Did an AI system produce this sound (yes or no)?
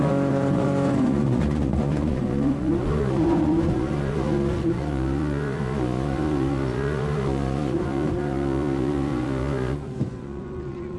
yes